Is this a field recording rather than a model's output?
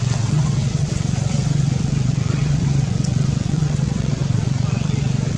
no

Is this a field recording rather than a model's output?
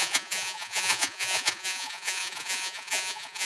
no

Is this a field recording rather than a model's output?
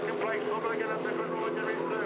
yes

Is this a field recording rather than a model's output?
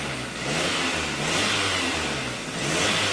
yes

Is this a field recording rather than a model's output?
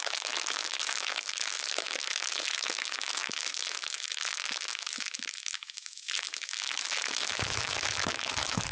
no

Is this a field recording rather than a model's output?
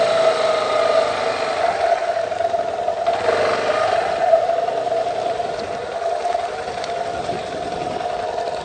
yes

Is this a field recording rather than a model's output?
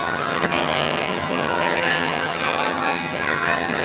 no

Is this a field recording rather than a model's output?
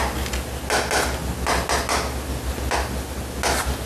yes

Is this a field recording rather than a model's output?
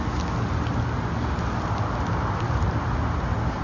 yes